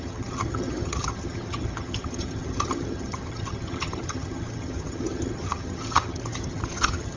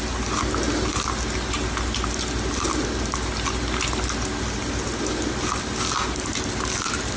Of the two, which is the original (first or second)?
second